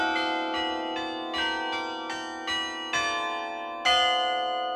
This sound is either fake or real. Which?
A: real